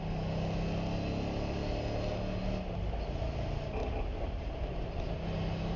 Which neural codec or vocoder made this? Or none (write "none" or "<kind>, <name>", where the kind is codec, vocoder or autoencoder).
none